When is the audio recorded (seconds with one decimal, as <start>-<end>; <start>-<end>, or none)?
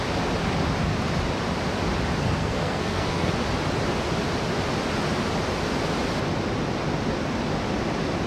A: 0.0-2.2; 3.3-8.3